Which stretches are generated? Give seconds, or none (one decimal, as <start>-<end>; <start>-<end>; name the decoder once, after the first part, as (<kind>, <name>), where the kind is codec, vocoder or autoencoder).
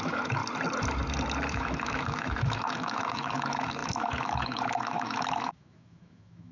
0.0-0.4 (autoencoder, DAC-VAE); 1.5-6.5